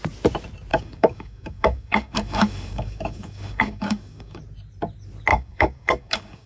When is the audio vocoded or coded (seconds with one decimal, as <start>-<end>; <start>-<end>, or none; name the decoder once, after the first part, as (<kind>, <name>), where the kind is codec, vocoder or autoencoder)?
0.7-4.4 (codec, DAC); 5.3-6.5